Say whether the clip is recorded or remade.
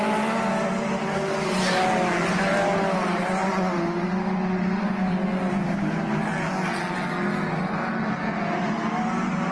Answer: recorded